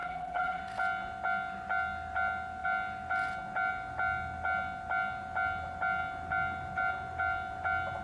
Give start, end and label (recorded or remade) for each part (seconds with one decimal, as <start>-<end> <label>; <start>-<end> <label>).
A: 0.0-0.6 remade; 0.6-8.0 recorded